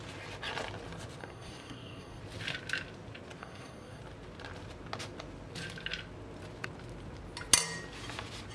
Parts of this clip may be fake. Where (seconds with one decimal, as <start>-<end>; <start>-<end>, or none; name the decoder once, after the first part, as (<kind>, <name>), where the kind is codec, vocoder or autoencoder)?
1.2-2.2 (codec, SNAC); 3.4-4.0